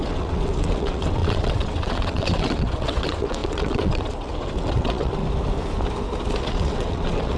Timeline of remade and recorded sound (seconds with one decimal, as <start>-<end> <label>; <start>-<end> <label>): 0.0-5.2 remade; 5.2-6.4 recorded; 6.4-7.4 remade